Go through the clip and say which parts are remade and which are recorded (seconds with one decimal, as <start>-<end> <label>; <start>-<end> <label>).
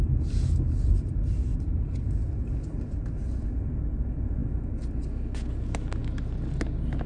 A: 0.0-1.5 recorded; 1.5-2.0 remade; 2.0-7.1 recorded